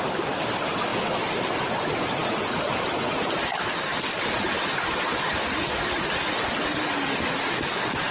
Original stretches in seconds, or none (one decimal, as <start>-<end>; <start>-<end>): 0.0-8.1